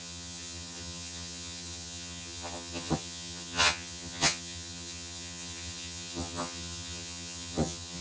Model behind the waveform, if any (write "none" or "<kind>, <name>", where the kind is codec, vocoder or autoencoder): vocoder, HiFi-GAN